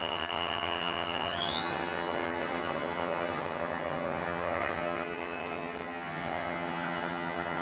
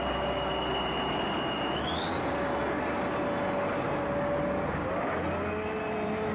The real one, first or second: second